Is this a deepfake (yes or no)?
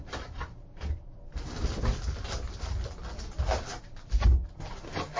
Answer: no